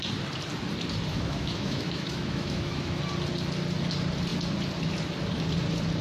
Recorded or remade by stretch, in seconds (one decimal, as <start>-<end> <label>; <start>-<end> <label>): 0.0-1.1 recorded; 1.1-3.0 remade; 3.0-6.0 recorded